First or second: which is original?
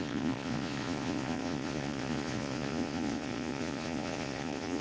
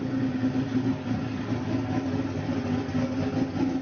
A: second